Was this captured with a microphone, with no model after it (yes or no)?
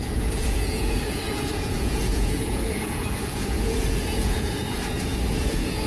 no